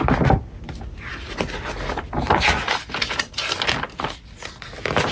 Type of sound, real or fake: real